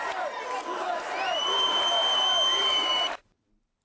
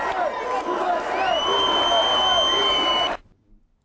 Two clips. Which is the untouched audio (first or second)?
second